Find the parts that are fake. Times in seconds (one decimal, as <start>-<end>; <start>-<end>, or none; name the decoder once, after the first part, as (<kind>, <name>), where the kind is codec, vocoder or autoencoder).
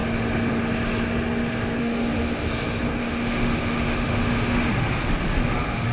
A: 1.8-2.5 (autoencoder, DAC-VAE); 3.0-4.6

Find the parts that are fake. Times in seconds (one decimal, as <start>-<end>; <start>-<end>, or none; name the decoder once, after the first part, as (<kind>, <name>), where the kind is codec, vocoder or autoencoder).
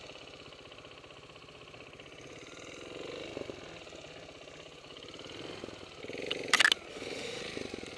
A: 6.9-7.4 (autoencoder, DAC-VAE)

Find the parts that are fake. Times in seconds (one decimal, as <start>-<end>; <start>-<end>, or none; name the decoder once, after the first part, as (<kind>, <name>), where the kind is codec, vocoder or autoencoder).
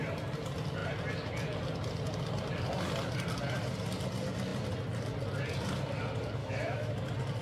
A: 6.4-6.9 (autoencoder, DAC-VAE)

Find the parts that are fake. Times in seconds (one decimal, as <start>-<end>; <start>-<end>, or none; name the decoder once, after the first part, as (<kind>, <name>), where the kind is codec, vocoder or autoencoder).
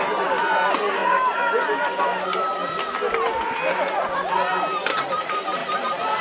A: none